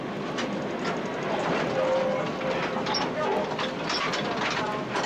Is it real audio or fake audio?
real